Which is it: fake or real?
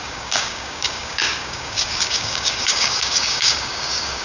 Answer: fake